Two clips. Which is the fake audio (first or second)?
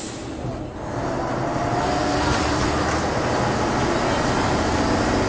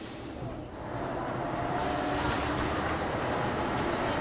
second